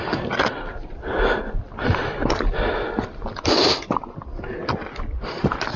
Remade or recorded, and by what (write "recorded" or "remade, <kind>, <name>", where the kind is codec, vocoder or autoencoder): recorded